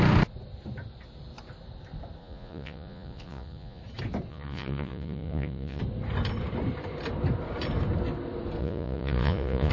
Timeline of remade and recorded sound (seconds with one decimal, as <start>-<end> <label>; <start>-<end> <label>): 0.0-2.2 recorded; 2.2-3.8 remade; 3.8-4.3 recorded; 4.3-5.8 remade; 5.8-8.6 recorded; 8.6-9.7 remade